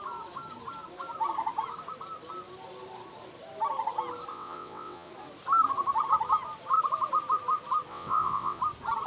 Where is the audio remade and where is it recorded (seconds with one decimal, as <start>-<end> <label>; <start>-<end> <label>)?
0.0-4.3 recorded; 4.3-5.1 remade; 5.1-7.9 recorded; 7.9-8.6 remade; 8.6-9.1 recorded